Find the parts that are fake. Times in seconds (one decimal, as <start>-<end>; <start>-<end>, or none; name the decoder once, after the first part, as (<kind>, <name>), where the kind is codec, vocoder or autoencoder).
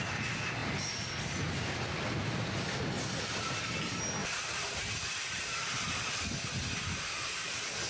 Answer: 4.2-5.6 (vocoder, BigVGAN v2)